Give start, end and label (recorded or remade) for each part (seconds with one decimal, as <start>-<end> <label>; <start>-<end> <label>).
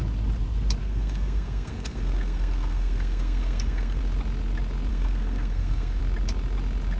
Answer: 0.0-0.8 recorded; 0.8-4.0 remade; 4.0-4.9 recorded; 4.9-6.0 remade; 6.0-7.0 recorded